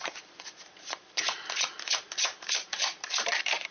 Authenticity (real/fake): fake